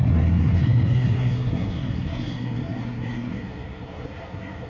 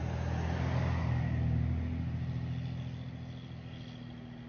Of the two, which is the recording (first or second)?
second